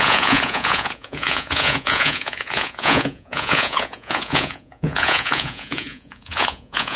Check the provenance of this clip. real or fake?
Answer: fake